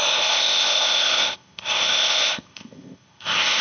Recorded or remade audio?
remade